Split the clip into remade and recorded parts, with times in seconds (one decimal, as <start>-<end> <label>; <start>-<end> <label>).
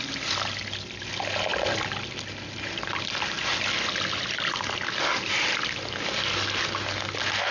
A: 0.0-7.5 recorded